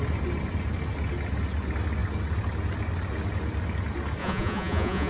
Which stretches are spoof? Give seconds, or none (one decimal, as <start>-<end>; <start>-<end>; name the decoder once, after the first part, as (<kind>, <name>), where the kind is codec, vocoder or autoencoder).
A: 4.2-5.1 (vocoder, Vocos)